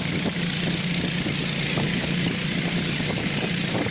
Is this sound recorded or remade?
recorded